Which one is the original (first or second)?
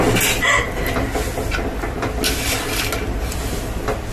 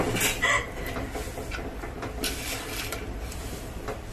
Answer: first